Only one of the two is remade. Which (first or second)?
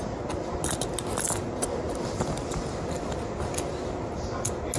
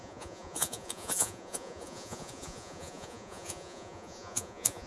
second